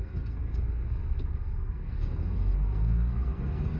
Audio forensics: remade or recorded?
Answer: remade